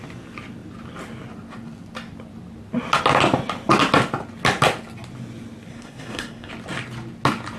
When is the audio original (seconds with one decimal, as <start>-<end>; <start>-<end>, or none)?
0.0-5.7; 6.5-7.6